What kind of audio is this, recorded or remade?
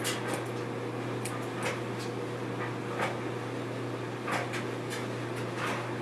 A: recorded